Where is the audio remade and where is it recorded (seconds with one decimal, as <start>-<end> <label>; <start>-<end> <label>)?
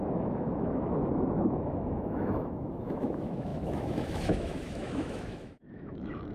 0.0-6.3 remade